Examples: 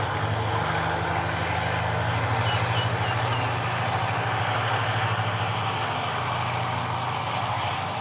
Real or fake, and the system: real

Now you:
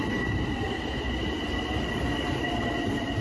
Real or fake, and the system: fake, vocoder, BigVGAN v2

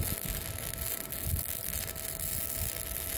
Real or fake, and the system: real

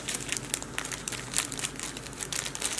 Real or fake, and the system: real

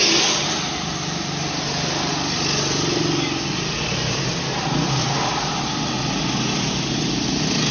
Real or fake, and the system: real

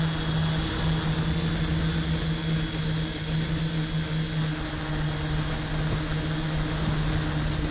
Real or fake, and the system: real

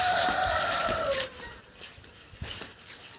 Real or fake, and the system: fake, vocoder, BigVGAN v2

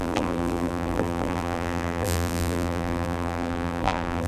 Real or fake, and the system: fake, vocoder, BigVGAN v2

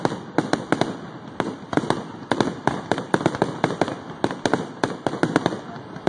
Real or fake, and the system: real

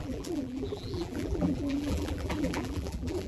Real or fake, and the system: fake, vocoder, BigVGAN v2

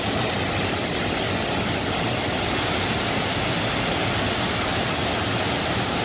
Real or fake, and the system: real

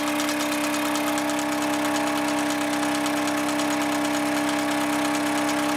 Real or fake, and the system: real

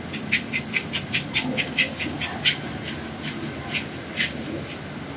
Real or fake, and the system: real